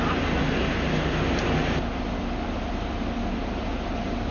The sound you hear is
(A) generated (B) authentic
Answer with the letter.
B